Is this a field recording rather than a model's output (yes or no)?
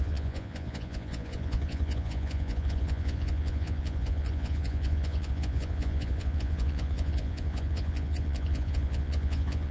no